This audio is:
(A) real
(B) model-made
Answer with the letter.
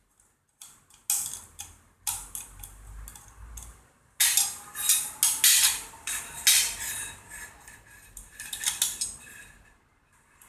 A